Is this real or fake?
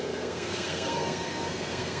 fake